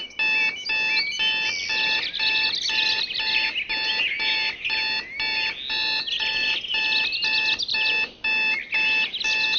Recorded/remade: recorded